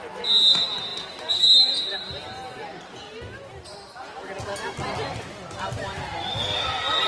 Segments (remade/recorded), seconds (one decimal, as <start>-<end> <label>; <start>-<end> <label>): 0.0-7.1 recorded